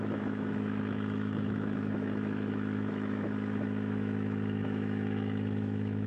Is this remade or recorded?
remade